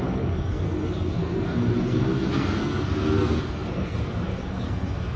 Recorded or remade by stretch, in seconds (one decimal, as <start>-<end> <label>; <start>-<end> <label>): 0.0-5.2 remade